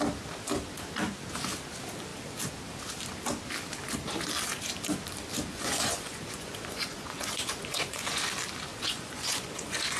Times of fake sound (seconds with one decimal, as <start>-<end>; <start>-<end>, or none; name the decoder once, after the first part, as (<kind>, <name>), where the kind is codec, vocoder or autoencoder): 5.5-8.2 (vocoder, Vocos); 8.7-10.0